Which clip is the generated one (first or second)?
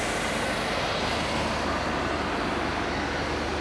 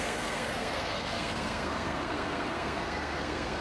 second